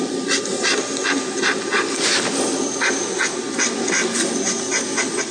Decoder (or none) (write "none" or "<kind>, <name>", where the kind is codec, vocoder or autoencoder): none